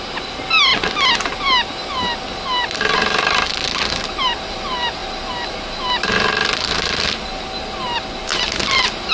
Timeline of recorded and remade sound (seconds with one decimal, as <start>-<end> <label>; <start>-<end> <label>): 0.0-9.1 recorded